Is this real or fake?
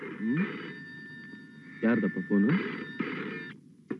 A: real